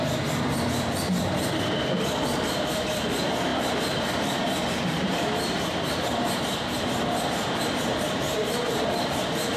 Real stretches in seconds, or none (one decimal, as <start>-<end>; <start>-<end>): none